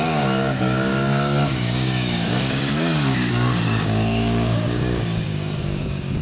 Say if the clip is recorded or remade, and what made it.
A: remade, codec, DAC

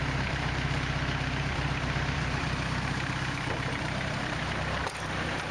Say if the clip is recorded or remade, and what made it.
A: remade, vocoder, BigVGAN v2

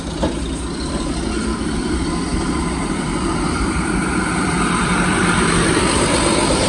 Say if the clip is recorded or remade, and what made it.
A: remade, vocoder, BigVGAN v2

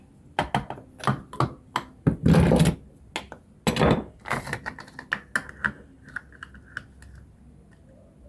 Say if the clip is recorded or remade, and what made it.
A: recorded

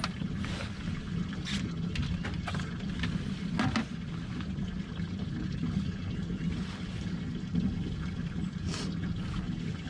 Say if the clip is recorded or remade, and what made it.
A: recorded